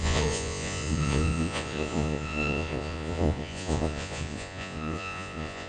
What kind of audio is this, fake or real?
fake